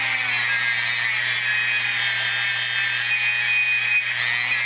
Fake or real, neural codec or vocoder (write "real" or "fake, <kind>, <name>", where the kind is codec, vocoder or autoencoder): real